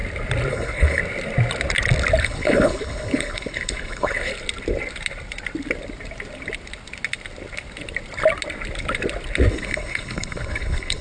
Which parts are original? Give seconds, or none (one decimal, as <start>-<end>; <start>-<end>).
0.0-0.5; 1.0-2.2; 4.3-9.5